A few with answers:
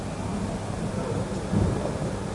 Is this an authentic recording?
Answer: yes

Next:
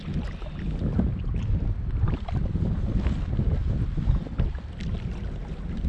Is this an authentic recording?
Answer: yes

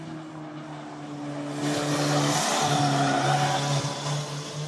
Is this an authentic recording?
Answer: yes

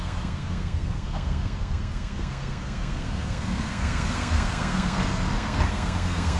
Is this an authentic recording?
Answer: no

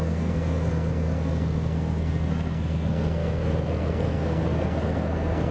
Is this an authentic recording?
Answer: no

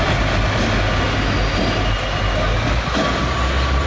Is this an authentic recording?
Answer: yes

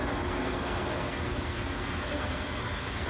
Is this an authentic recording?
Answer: no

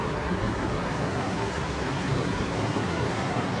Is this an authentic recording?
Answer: no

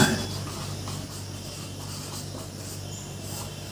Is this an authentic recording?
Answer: yes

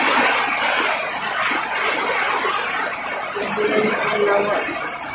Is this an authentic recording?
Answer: yes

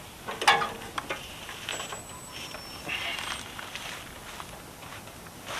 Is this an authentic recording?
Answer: yes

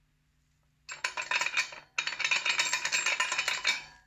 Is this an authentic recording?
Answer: yes